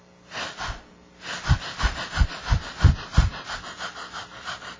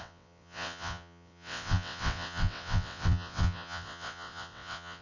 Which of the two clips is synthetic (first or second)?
second